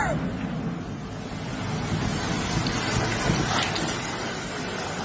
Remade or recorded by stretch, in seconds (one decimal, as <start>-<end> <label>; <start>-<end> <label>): 0.0-5.0 recorded